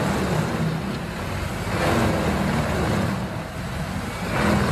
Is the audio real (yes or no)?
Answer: yes